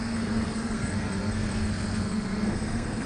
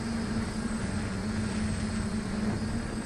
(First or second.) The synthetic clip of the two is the first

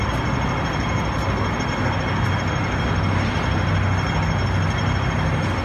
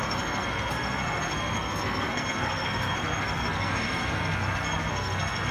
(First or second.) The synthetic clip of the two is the second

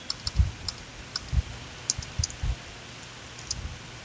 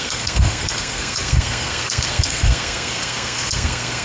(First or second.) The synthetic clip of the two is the second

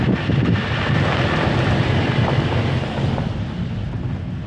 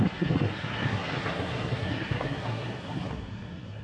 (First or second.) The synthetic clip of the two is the second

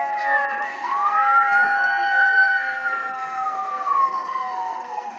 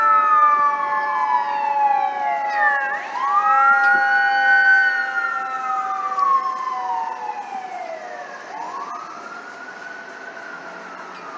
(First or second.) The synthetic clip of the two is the first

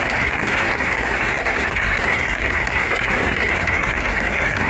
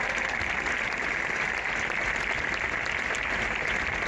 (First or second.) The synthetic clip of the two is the first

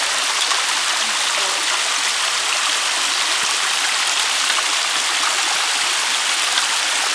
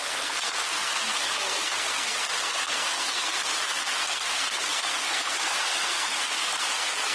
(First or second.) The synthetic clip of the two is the second